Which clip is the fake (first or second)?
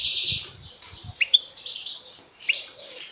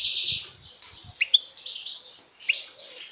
first